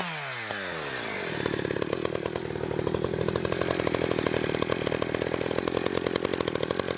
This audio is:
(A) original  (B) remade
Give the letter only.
A